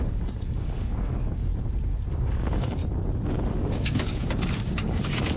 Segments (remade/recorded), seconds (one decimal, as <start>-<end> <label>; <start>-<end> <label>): 0.0-1.5 remade; 1.5-2.1 recorded; 2.1-2.8 remade; 2.8-3.5 recorded; 3.5-5.4 remade